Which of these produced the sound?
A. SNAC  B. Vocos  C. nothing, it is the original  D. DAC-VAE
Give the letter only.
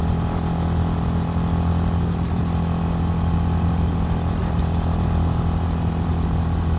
C